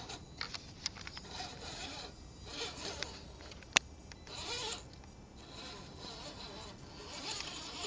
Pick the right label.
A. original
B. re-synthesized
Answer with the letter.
A